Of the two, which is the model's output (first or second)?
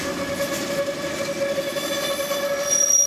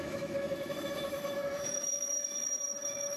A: second